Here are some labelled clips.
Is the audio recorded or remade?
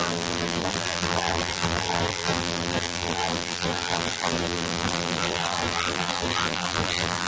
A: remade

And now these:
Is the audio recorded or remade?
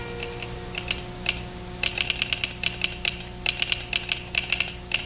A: recorded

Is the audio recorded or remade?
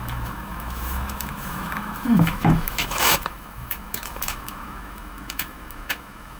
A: remade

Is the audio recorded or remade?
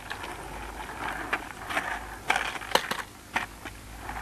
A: recorded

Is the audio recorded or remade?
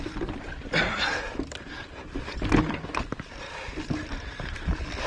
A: recorded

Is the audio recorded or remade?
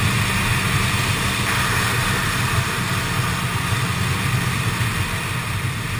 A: recorded